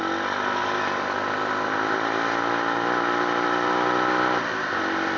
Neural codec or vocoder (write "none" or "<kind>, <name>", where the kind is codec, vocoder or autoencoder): none